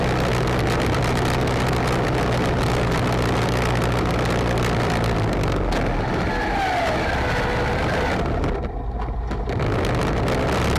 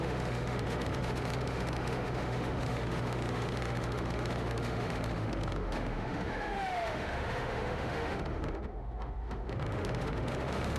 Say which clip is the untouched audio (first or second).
first